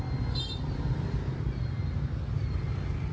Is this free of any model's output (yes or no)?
yes